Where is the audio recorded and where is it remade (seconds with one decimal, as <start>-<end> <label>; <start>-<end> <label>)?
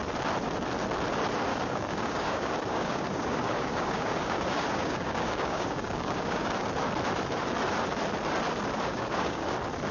0.0-1.5 recorded; 1.5-6.6 remade; 6.6-8.9 recorded; 8.9-9.5 remade; 9.5-9.9 recorded